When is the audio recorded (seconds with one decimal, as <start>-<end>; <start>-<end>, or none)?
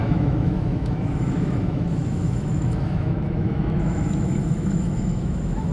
none